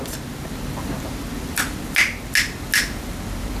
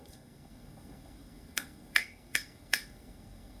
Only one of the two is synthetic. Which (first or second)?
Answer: second